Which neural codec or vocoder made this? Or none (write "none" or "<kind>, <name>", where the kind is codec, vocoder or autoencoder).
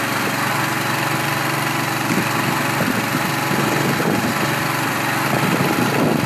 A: none